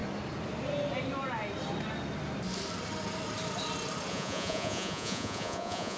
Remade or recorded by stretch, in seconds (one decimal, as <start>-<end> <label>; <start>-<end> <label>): 0.0-4.1 recorded; 4.1-6.0 remade